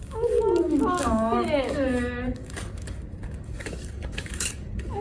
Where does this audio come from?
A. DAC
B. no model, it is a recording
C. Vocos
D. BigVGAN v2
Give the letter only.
A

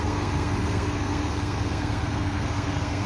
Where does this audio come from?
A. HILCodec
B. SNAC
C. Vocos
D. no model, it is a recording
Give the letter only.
B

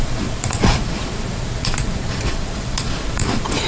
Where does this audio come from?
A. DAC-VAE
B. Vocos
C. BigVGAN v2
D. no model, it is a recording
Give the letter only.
B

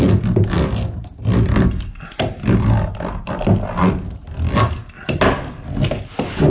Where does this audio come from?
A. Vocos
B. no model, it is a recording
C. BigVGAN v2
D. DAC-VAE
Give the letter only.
B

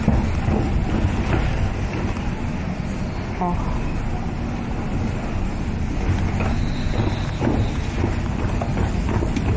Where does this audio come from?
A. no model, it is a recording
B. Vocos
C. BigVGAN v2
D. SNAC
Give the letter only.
A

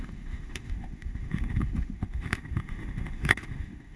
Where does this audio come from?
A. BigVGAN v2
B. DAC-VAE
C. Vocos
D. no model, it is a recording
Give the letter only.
B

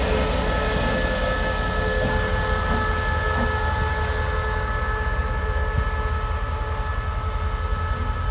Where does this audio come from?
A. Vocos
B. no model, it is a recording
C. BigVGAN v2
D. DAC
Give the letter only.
B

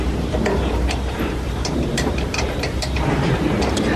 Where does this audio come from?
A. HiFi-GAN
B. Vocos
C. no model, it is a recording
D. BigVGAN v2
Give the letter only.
D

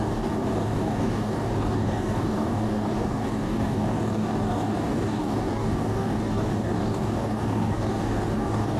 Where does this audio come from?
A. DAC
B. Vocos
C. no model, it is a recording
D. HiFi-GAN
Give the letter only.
A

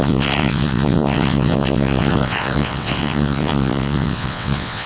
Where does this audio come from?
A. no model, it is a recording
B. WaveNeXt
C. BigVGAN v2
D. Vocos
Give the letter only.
B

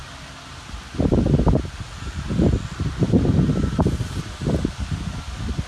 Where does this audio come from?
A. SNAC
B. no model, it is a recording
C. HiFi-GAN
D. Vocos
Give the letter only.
B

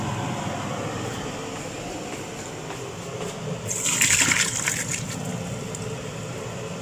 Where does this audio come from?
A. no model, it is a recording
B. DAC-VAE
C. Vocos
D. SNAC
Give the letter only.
A